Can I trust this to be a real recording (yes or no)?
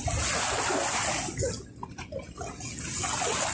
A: yes